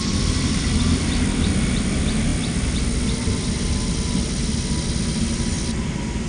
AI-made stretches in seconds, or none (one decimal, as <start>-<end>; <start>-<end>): none